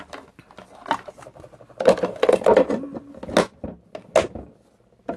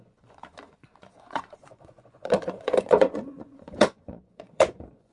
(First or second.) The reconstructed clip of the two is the second